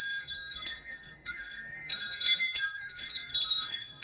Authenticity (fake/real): fake